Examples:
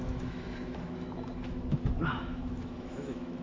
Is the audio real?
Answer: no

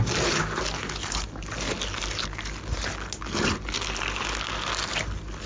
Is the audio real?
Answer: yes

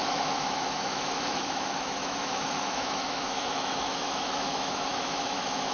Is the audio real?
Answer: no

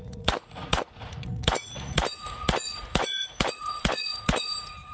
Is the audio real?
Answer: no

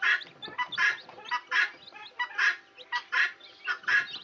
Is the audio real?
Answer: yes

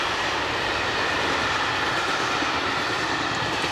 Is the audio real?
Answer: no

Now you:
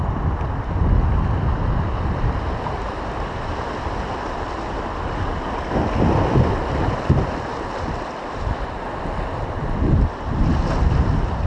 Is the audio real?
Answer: yes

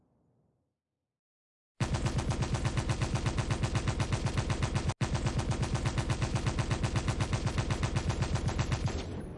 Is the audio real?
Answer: yes